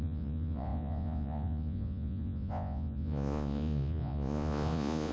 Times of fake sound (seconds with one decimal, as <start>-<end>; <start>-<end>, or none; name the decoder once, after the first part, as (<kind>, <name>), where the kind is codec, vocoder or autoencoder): 0.0-5.1 (vocoder, Vocos)